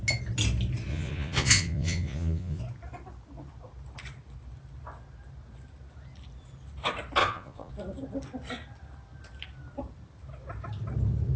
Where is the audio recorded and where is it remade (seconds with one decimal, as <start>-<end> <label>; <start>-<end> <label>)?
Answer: 0.0-0.9 recorded; 0.9-2.6 remade; 2.6-7.2 recorded; 7.2-7.7 remade; 7.7-11.4 recorded